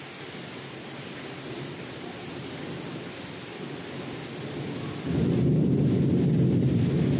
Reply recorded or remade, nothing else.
recorded